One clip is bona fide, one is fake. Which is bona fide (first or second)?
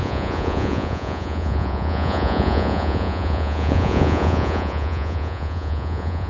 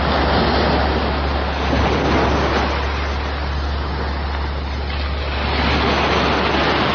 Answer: second